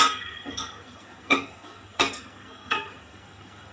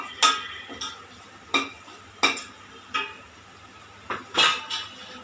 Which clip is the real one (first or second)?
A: second